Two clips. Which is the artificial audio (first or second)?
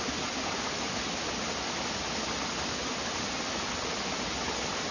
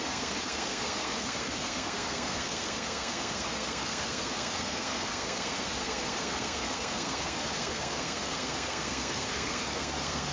second